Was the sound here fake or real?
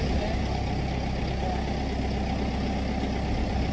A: real